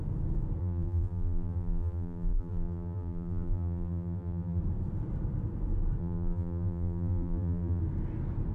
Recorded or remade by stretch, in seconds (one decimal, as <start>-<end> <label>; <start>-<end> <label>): 0.0-0.6 recorded; 0.6-4.6 remade; 4.6-6.0 recorded; 6.0-7.8 remade; 7.8-8.5 recorded